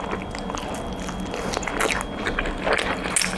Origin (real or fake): real